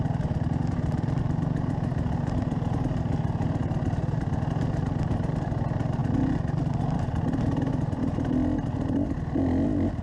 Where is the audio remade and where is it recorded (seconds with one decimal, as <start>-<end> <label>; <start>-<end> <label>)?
0.0-10.0 recorded